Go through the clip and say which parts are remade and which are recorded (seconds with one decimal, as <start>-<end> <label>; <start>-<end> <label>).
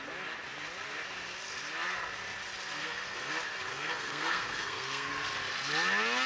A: 0.0-2.8 recorded; 2.8-3.3 remade; 3.3-3.7 recorded; 3.7-5.1 remade; 5.1-6.3 recorded